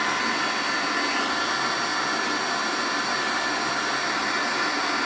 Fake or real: real